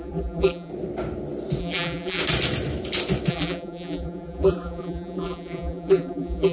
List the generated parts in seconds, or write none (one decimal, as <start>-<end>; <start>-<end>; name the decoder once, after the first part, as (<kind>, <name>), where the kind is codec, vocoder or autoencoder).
0.0-0.7 (vocoder, BigVGAN v2); 1.6-2.2; 3.3-6.5